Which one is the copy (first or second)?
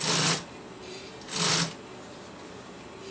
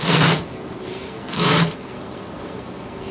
second